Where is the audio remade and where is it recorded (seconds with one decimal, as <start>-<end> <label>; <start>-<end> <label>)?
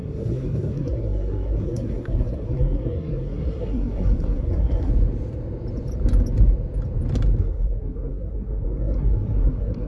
0.0-4.9 remade; 4.9-7.4 recorded; 7.4-9.9 remade